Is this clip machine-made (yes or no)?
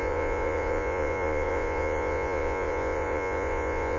yes